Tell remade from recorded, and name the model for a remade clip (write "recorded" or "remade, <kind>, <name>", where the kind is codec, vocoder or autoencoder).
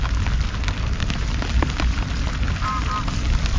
recorded